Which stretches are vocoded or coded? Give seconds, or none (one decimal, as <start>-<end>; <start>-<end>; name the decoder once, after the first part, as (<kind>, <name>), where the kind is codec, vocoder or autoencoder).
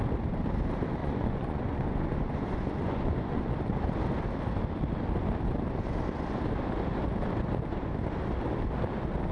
1.0-3.4 (vocoder, Vocos)